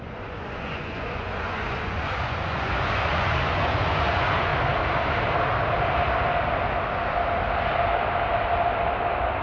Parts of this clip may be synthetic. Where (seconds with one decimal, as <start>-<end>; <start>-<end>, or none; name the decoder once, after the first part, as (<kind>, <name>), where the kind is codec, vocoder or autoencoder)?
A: 0.0-4.5 (vocoder, Vocos)